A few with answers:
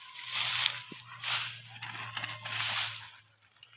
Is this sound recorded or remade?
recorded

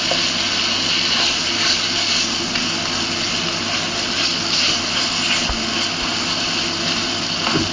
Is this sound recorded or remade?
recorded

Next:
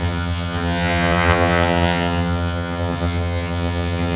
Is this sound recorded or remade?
remade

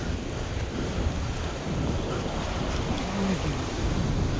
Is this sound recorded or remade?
recorded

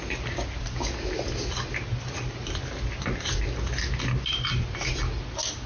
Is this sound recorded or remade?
recorded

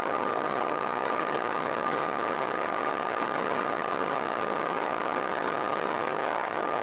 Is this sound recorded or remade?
remade